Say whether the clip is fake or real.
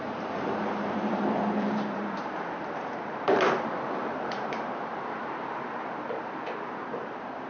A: fake